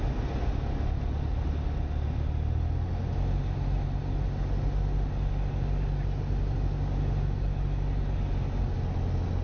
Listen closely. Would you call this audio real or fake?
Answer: real